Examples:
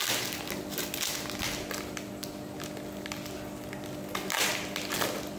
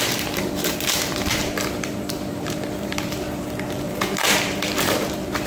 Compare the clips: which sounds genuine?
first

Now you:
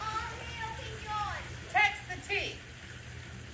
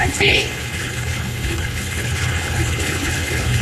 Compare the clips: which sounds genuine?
first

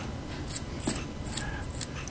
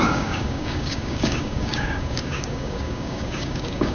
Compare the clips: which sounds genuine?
first